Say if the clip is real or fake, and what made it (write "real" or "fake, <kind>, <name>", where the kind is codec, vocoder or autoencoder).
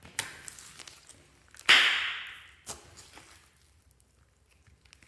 real